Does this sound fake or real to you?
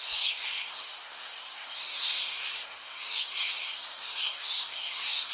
fake